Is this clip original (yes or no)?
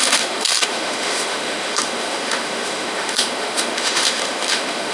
no